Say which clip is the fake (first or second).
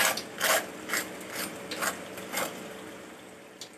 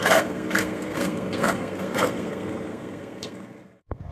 second